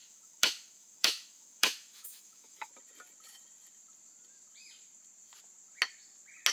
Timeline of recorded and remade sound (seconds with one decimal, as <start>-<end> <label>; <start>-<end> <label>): 0.0-2.7 remade; 2.7-6.5 recorded